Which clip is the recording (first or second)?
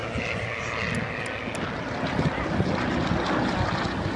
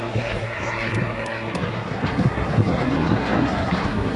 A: first